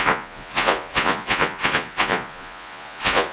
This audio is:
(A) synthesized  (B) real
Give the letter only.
A